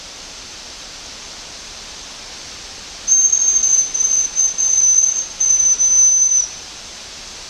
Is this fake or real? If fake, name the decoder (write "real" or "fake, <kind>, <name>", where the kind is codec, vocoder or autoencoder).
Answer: fake, vocoder, BigVGAN v2